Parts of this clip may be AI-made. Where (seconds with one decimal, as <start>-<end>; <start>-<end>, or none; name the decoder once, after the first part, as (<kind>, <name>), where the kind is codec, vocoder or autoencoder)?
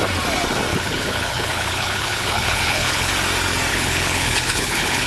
0.7-3.1 (codec, HILCodec); 3.7-5.1